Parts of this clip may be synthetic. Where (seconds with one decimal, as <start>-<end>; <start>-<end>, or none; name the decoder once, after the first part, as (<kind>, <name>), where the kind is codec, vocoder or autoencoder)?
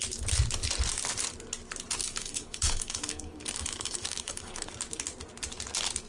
2.0-4.7 (codec, DAC)